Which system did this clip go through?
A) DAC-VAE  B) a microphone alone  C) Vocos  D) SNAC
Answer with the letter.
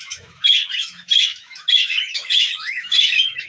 A